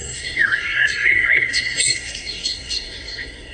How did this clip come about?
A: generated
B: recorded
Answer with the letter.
A